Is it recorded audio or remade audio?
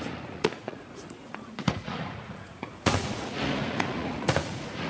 remade